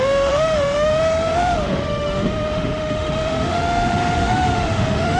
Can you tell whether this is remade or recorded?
remade